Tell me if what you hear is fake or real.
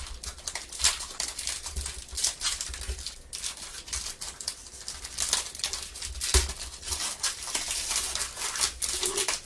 real